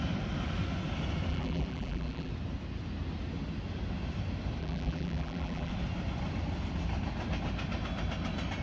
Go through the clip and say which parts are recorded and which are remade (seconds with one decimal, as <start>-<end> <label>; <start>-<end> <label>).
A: 0.0-1.3 recorded; 1.3-2.3 remade; 2.3-4.6 recorded; 4.6-5.7 remade; 5.7-8.6 recorded